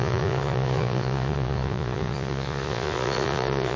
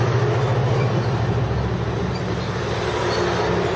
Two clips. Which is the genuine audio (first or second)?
second